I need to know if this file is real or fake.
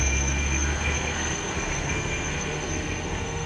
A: fake